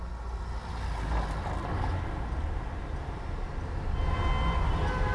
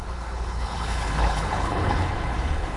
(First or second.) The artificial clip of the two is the second